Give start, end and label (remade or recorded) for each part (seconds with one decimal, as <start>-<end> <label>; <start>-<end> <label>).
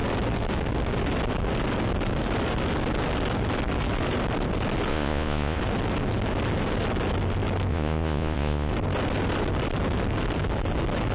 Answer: 0.0-4.9 recorded; 4.9-5.6 remade; 5.6-7.7 recorded; 7.7-8.7 remade; 8.7-11.1 recorded